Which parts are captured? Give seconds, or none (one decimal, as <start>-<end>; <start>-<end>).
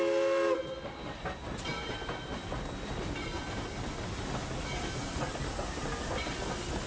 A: 0.0-6.9